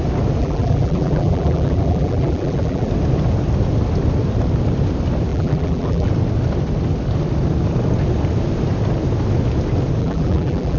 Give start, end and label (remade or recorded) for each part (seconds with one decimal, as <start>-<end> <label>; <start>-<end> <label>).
0.0-0.4 recorded; 0.4-2.9 remade; 2.9-5.3 recorded; 5.3-6.1 remade; 6.1-10.0 recorded; 10.0-10.8 remade